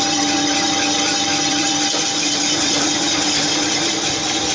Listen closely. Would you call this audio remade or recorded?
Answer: remade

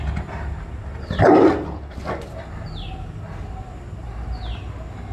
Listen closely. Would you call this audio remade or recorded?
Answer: recorded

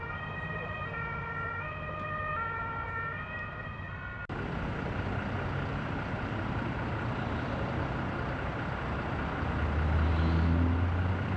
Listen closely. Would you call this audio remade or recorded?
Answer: recorded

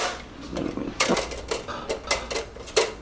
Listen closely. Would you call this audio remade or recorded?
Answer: recorded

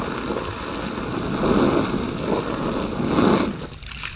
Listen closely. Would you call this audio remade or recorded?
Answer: recorded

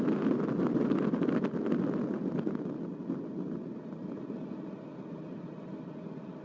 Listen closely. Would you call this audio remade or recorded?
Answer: recorded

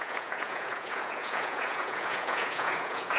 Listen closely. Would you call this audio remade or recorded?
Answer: remade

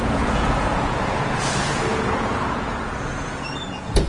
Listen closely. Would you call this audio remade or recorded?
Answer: remade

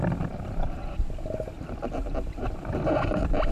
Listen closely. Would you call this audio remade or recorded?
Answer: recorded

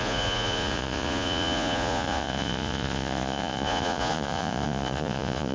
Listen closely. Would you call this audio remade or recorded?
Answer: remade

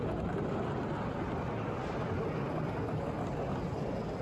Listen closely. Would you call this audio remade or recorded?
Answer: recorded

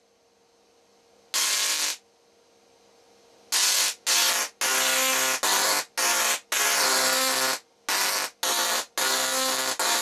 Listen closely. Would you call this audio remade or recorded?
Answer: recorded